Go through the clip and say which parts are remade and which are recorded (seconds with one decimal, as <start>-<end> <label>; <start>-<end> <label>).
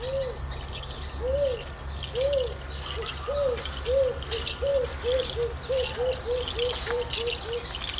0.0-8.0 recorded